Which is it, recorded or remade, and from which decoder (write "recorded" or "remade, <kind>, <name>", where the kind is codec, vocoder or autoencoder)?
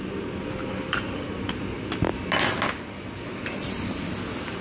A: recorded